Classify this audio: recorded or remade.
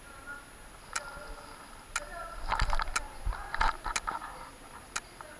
recorded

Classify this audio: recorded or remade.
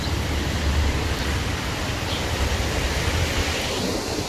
remade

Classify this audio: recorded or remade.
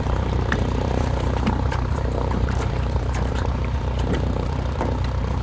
remade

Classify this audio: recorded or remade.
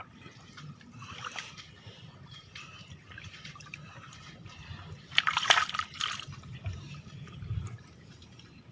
remade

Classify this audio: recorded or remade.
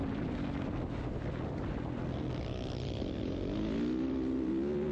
recorded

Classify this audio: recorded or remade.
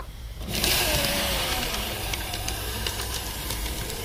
remade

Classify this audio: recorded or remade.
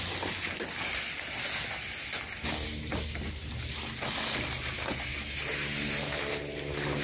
recorded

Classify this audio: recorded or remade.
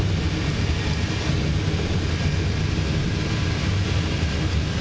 recorded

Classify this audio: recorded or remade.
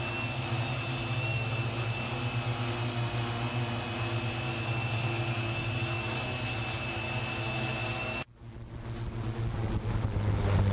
recorded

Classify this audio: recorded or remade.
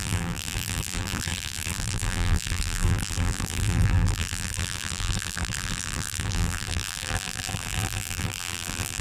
remade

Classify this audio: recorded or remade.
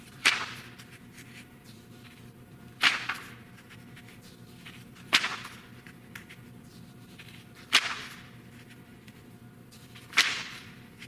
remade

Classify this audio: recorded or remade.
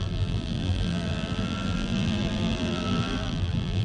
remade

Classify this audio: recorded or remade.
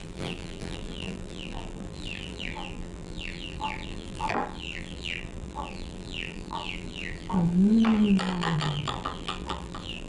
remade